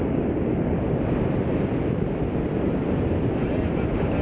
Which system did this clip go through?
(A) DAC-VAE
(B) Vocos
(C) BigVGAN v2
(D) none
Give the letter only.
C